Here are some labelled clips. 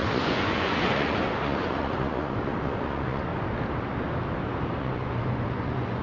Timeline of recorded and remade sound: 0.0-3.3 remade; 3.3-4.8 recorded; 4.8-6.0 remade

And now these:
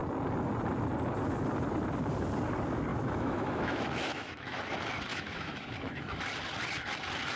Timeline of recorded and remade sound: 0.0-2.9 recorded; 2.9-4.6 remade; 4.6-5.1 recorded; 5.1-6.2 remade; 6.2-7.4 recorded

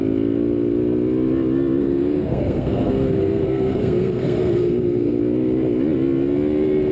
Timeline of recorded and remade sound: 0.0-1.8 recorded; 1.8-5.2 remade; 5.2-6.9 recorded

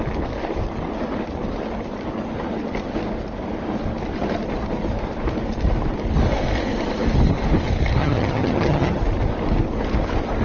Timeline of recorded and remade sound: 0.0-8.0 recorded; 8.0-9.0 remade; 9.0-10.4 recorded